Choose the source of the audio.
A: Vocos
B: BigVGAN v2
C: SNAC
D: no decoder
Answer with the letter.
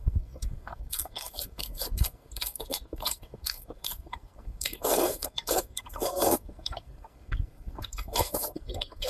C